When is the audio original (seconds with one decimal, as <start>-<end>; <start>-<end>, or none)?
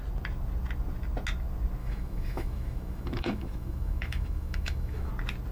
0.0-1.8; 5.1-5.5